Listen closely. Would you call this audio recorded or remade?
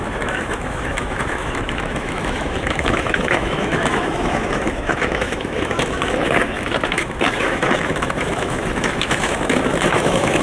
remade